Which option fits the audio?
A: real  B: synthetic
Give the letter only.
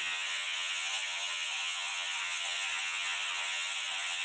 B